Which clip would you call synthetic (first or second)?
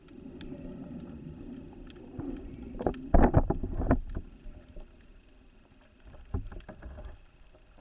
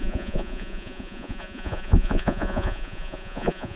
second